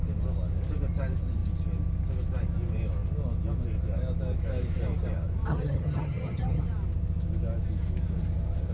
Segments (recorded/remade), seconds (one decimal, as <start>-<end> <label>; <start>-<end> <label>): 0.0-5.5 recorded; 5.5-6.6 remade; 6.6-8.7 recorded